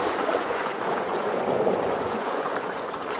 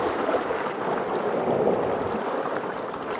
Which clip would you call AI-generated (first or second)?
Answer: first